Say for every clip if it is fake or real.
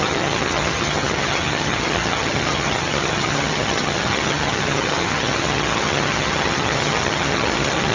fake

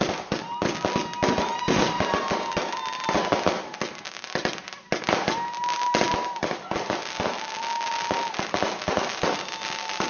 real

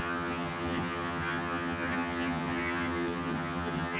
fake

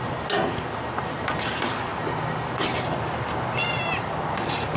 real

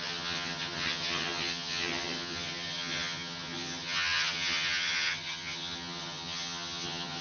fake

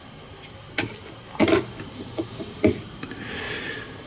real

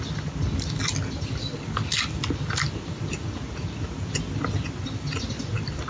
real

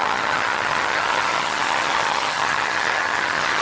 fake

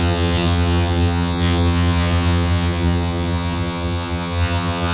fake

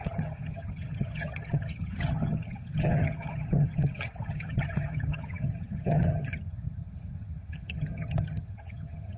fake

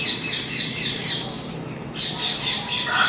real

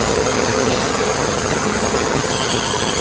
fake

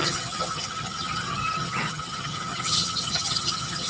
fake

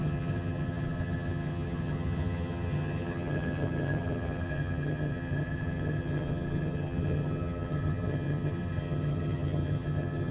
fake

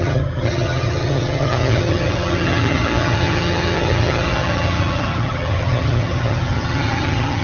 fake